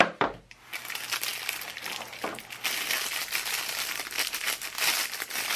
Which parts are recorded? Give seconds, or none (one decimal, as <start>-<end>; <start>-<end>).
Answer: 0.0-1.3; 1.9-5.6